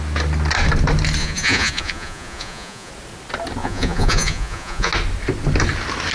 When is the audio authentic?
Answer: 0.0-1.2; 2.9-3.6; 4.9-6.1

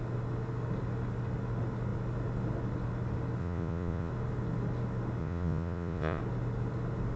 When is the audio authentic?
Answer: 0.0-3.4; 4.1-5.2; 6.2-7.2

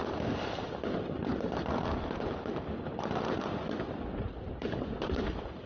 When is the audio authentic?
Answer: 0.0-5.7

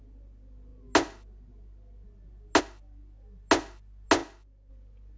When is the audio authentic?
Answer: 0.0-5.2